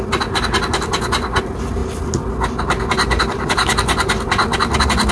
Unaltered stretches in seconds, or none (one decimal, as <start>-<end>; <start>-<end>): 0.0-5.1